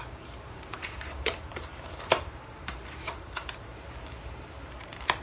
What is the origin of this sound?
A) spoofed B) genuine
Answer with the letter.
A